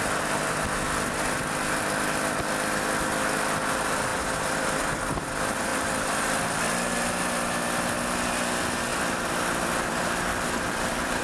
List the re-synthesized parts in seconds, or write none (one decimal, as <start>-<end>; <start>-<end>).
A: 4.1-5.2; 5.7-6.7; 8.9-11.2